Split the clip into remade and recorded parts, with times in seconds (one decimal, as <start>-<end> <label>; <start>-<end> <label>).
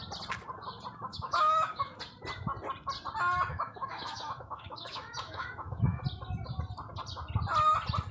0.0-1.1 recorded; 1.1-2.0 remade; 2.0-3.5 recorded; 3.5-6.0 remade; 6.0-8.1 recorded